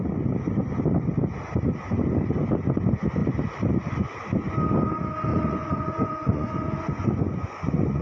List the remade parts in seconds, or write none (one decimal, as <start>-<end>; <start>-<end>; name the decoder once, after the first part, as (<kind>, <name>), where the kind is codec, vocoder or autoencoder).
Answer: 5.3-8.0 (vocoder, Vocos)